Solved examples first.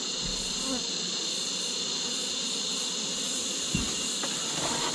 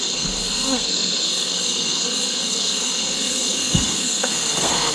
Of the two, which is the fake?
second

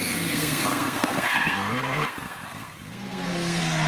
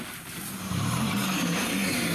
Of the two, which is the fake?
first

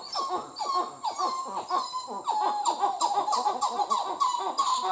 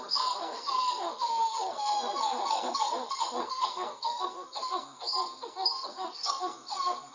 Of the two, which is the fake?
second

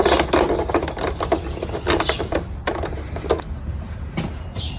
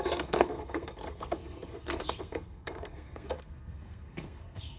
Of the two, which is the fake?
second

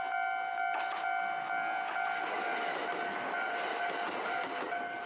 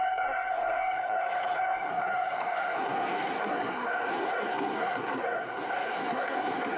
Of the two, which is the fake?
second